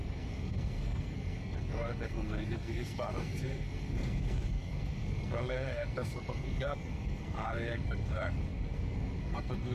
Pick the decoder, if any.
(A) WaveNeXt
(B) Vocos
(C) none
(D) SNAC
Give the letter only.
D